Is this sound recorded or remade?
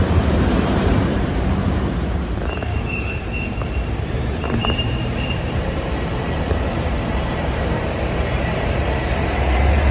remade